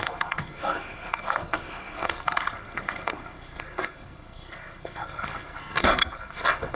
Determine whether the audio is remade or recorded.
remade